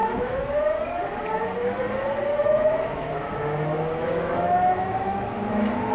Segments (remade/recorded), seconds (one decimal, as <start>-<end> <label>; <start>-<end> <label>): 0.0-0.6 remade; 0.6-2.3 recorded; 2.3-5.9 remade